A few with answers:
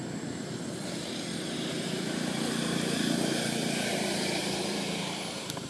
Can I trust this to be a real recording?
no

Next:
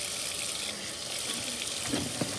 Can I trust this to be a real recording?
yes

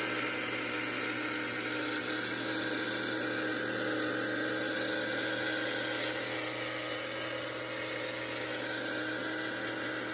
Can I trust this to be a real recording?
yes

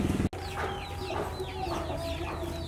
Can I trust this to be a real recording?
yes